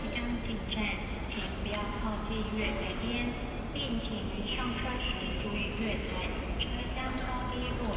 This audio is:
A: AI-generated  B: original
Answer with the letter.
B